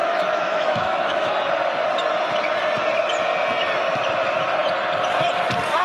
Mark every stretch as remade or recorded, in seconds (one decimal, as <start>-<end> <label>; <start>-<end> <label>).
0.0-1.3 remade; 1.3-5.8 recorded